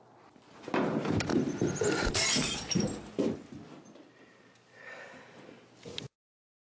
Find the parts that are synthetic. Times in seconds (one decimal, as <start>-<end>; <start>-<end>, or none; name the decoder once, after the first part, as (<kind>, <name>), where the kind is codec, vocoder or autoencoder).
1.3-3.5 (vocoder, BigVGAN v2)